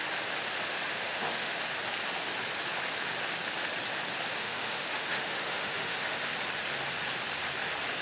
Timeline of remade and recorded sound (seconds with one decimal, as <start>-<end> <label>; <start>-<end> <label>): 0.0-0.7 recorded; 0.7-1.6 remade; 1.6-4.4 recorded; 4.4-6.3 remade; 6.3-8.0 recorded